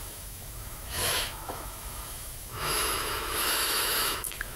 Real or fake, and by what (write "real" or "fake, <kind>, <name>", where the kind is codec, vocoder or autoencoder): fake, autoencoder, DAC-VAE